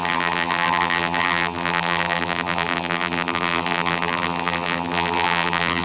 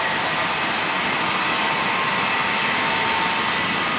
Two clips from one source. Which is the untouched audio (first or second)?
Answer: second